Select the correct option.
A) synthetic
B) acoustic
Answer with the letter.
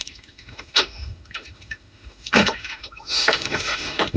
A